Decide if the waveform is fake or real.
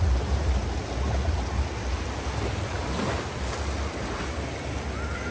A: real